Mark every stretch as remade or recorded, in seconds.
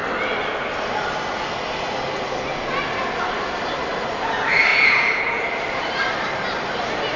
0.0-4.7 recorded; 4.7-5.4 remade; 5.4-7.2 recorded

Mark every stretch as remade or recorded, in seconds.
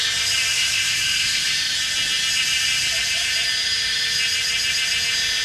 0.0-0.5 recorded; 0.5-1.5 remade; 1.5-5.4 recorded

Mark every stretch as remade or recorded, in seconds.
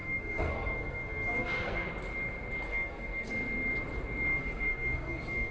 0.0-1.9 remade; 1.9-2.7 recorded; 2.7-3.3 remade; 3.3-4.3 recorded; 4.3-5.5 remade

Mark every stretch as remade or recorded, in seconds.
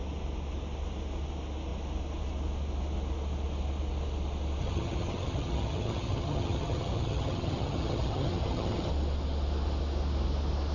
0.0-4.6 recorded; 4.6-8.9 remade; 8.9-10.7 recorded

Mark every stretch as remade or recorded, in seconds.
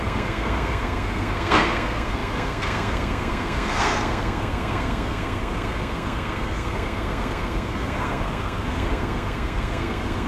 0.0-10.3 remade